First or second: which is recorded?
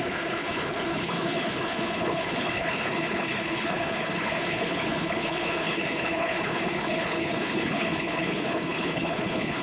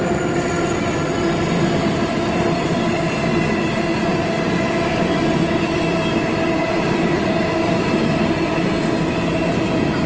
second